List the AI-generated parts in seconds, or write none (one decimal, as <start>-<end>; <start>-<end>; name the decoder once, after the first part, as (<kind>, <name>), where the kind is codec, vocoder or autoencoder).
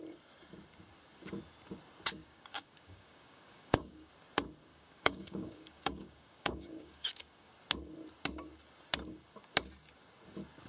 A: 2.2-4.1 (codec, DAC); 4.7-7.5